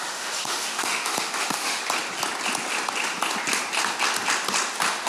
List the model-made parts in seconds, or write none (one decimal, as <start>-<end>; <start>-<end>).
0.0-1.8